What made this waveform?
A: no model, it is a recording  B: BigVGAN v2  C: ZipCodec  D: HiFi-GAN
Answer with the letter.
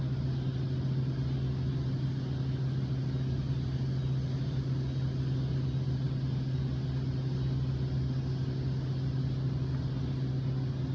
A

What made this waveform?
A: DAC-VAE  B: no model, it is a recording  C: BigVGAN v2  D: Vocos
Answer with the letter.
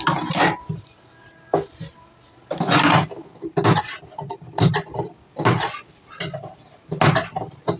B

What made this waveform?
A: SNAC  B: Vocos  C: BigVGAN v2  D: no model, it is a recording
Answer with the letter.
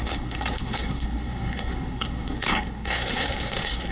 A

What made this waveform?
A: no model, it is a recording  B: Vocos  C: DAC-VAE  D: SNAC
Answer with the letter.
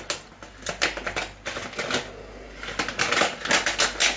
A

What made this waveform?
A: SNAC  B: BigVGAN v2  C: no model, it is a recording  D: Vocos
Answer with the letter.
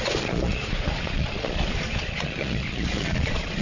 D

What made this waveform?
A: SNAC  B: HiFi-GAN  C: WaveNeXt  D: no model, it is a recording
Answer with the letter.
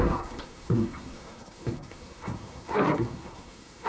A